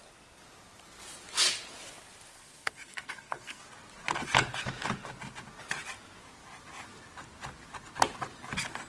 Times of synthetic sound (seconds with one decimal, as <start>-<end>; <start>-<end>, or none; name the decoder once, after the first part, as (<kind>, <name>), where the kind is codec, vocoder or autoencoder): 2.3-3.6 (codec, SNAC)